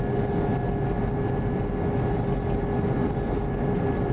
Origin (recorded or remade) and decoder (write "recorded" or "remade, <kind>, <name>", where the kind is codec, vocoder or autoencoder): recorded